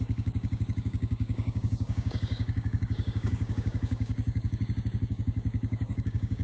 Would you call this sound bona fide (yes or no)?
no